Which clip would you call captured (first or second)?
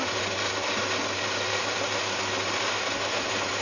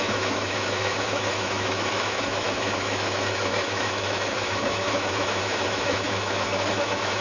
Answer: first